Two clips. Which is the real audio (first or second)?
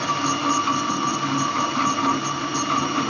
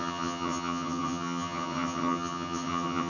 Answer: first